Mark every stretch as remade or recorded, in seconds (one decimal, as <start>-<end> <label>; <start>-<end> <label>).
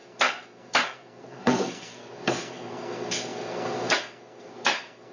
0.0-5.1 remade